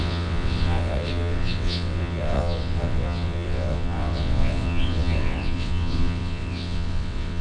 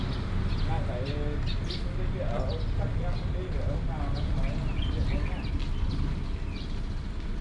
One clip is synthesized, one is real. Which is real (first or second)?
second